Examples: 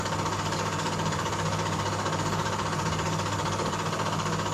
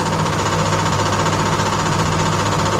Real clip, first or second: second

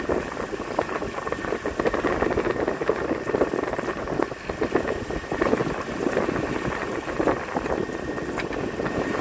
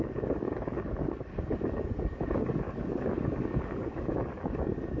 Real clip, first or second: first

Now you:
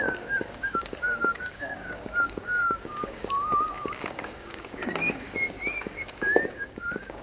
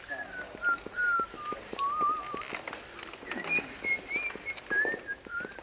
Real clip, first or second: second